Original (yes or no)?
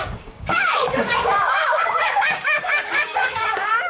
no